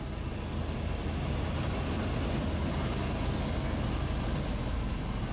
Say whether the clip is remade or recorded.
recorded